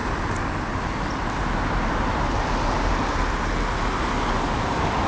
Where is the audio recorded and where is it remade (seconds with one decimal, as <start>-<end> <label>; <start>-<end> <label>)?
0.0-5.1 recorded